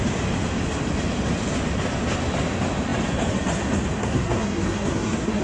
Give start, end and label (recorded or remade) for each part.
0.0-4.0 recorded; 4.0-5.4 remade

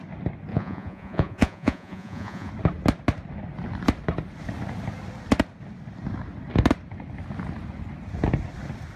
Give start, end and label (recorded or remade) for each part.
0.0-0.5 recorded; 0.5-2.5 remade; 2.5-9.0 recorded

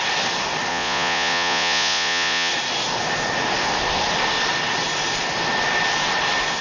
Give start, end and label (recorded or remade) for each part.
0.0-0.7 recorded; 0.7-2.5 remade; 2.5-6.6 recorded

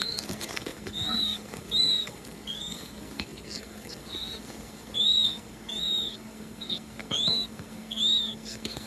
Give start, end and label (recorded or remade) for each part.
0.0-8.9 remade

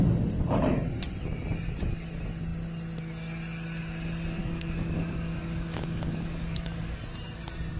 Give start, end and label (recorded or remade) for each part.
0.0-4.4 recorded; 4.4-7.0 remade; 7.0-7.8 recorded

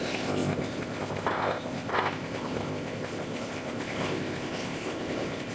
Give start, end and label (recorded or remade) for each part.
0.0-5.5 remade

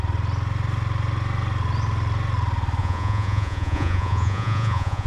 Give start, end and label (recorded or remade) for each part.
0.0-2.8 recorded; 2.8-5.1 remade